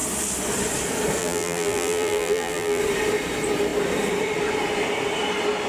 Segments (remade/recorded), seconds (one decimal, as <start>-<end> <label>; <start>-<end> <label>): 0.0-1.2 recorded; 1.2-2.8 remade; 2.8-5.7 recorded